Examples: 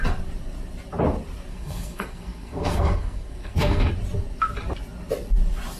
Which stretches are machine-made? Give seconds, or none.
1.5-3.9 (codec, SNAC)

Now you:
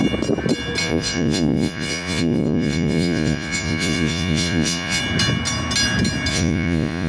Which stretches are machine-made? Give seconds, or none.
0.8-5.0 (vocoder, Vocos); 6.3-7.1

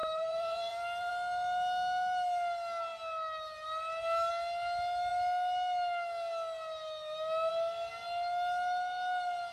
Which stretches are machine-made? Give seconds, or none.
0.0-1.1 (vocoder, BigVGAN v2)

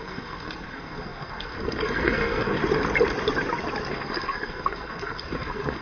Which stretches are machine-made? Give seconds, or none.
0.0-2.6 (codec, SNAC); 3.9-5.8

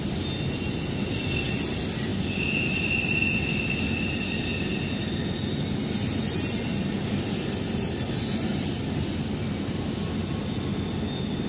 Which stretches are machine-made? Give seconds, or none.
none

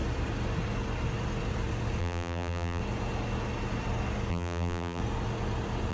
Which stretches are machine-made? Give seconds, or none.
2.0-2.8 (vocoder, BigVGAN v2); 4.3-5.0

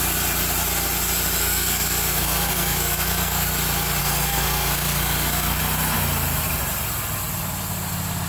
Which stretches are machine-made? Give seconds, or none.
1.4-3.5 (codec, SNAC); 4.0-5.6

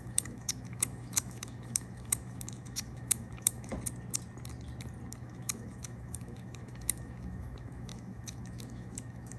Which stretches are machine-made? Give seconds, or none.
0.0-3.7 (autoencoder, DAC-VAE); 5.2-9.4